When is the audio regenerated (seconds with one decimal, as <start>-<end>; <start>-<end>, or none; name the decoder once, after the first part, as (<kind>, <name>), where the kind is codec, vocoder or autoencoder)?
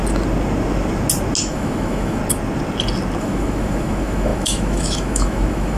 1.4-2.2 (autoencoder, DAC-VAE); 3.2-5.8